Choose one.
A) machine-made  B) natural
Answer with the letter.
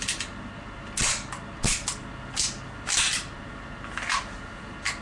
B